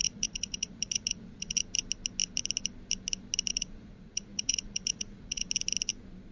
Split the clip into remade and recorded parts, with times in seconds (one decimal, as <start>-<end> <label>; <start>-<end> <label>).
0.0-1.6 remade; 1.6-3.5 recorded; 3.5-5.5 remade; 5.5-6.3 recorded